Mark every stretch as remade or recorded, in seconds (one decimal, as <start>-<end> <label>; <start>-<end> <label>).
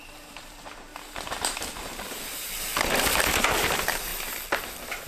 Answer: 0.0-0.9 remade; 0.9-1.8 recorded; 1.8-2.7 remade; 2.7-3.3 recorded; 3.3-4.1 remade; 4.1-5.1 recorded